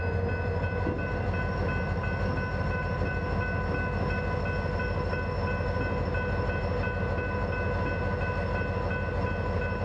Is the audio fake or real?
real